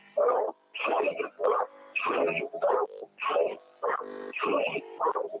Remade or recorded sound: recorded